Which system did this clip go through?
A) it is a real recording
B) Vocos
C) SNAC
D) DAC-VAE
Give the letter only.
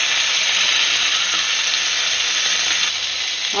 A